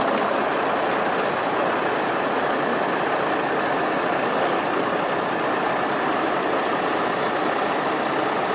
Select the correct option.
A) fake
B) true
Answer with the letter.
B